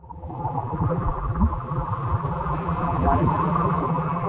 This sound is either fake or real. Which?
fake